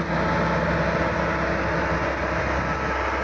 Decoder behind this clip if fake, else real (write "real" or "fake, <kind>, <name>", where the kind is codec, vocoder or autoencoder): real